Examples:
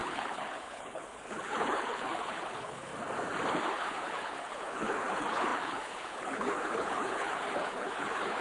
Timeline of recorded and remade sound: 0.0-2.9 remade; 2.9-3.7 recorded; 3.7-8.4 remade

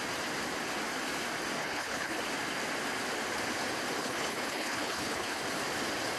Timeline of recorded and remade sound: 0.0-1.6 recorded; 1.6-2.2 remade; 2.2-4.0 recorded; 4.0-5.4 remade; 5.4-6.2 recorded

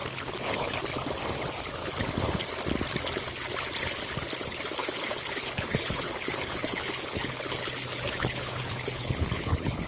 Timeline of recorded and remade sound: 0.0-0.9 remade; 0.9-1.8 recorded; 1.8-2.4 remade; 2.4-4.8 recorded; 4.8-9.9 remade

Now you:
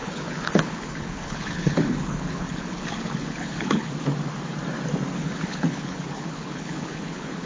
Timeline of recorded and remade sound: 0.0-3.9 remade; 3.9-5.2 recorded; 5.2-7.5 remade

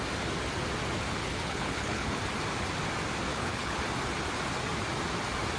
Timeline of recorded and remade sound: 0.0-1.2 recorded; 1.2-2.2 remade; 2.2-3.3 recorded; 3.3-3.8 remade; 3.8-5.6 recorded

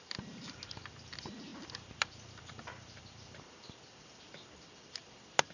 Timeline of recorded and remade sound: 0.0-5.5 recorded

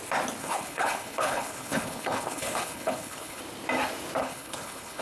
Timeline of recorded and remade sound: 0.0-0.4 recorded; 0.4-3.4 remade; 3.4-4.2 recorded; 4.2-5.0 remade